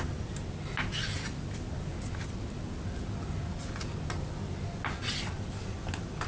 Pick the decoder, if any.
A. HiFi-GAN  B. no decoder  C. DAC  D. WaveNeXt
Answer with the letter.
B